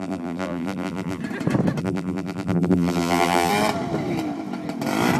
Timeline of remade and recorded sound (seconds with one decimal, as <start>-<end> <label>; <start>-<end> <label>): 0.0-1.2 remade; 1.2-1.8 recorded; 1.8-3.5 remade; 3.5-5.2 recorded